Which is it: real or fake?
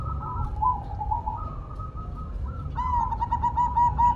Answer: real